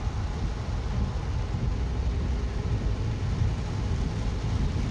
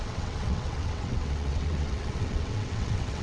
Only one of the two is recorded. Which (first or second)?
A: first